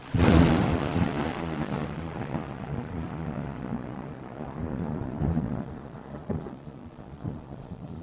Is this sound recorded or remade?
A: remade